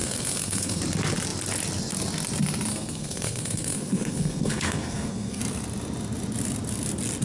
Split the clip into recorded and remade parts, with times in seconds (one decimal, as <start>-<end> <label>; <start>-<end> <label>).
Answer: 0.0-0.8 remade; 0.8-2.7 recorded; 2.7-5.4 remade; 5.4-7.2 recorded